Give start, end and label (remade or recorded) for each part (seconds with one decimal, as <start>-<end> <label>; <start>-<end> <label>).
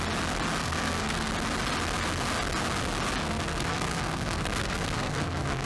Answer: 0.0-0.6 recorded; 0.6-1.3 remade; 1.3-3.2 recorded; 3.2-5.7 remade